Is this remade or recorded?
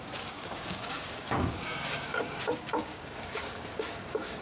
remade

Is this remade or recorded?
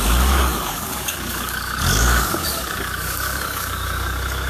remade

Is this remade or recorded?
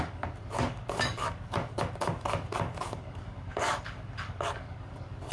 remade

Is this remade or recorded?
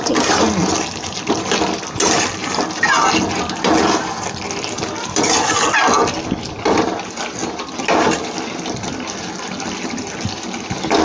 recorded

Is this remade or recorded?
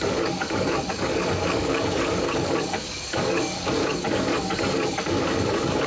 remade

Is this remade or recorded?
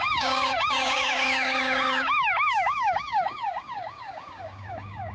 remade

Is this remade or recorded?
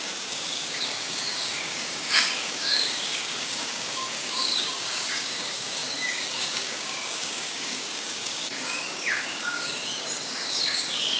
remade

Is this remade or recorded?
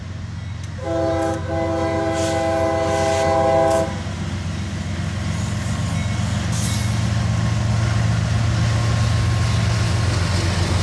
recorded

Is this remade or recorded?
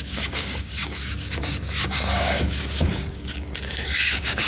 remade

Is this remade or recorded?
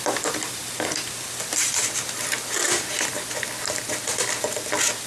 recorded